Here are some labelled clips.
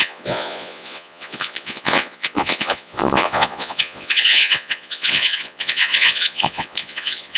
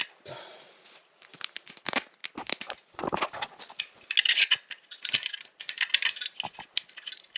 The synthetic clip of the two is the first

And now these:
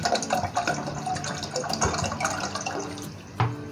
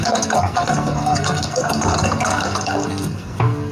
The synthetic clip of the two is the second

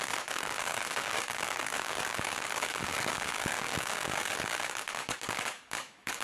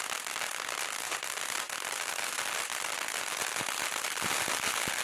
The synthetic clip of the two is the first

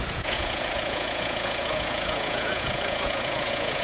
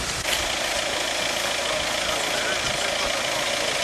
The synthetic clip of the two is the first